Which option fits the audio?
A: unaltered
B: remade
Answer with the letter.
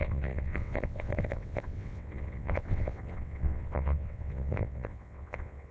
B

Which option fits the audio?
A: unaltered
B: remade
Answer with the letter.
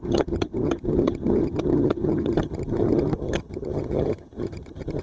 B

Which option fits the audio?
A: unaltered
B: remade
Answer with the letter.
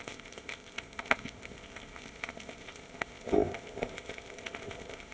B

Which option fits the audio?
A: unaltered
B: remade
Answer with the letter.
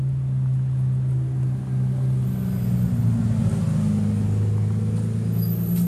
A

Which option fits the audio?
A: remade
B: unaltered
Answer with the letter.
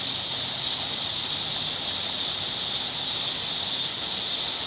B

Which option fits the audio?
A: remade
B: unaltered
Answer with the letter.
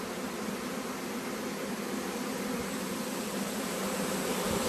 B